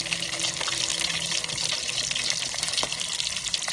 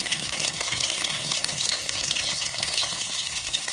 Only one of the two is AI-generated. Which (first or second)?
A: second